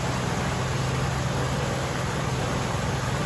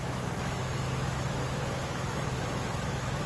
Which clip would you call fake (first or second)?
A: second